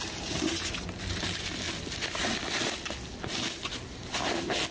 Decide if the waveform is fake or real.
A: real